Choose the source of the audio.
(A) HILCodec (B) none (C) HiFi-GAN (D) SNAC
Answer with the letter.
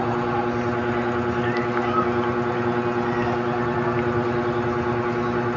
B